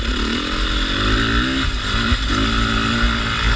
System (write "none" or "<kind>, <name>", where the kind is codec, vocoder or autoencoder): none